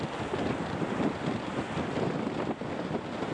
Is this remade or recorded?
recorded